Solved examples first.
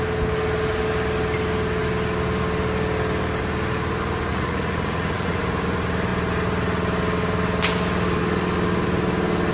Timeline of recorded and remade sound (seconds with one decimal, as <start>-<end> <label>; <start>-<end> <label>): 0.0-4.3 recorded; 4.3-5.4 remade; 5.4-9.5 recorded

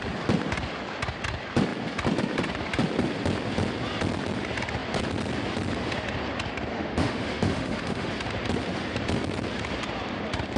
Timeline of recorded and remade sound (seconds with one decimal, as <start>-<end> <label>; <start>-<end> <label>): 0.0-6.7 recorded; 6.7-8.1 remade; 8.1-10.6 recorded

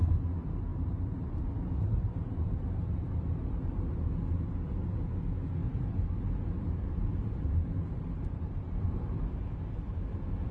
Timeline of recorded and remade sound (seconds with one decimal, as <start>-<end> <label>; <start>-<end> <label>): 0.0-0.7 recorded; 0.7-3.9 remade; 3.9-5.6 recorded; 5.6-9.0 remade; 9.0-10.5 recorded

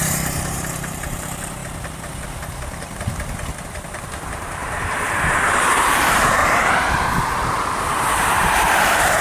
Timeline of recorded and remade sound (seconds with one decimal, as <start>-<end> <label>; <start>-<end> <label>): 0.0-1.6 remade; 1.6-3.6 recorded; 3.6-6.4 remade; 6.4-7.3 recorded; 7.3-9.2 remade

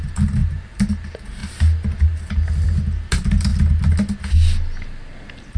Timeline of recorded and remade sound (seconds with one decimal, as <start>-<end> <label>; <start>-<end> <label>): 0.0-0.4 recorded; 0.4-0.9 remade; 0.9-5.6 recorded

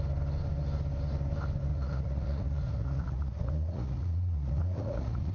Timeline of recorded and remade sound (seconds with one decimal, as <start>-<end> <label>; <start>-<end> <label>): 0.0-1.7 recorded; 1.7-5.3 remade

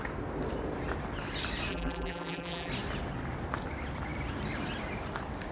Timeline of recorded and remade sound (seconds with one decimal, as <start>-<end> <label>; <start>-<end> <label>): 0.0-1.7 recorded; 1.7-2.7 remade; 2.7-5.5 recorded

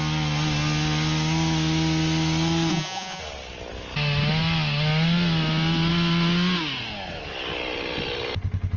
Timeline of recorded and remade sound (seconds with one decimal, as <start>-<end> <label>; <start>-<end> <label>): 0.0-2.7 recorded; 2.7-3.2 remade; 3.2-8.8 recorded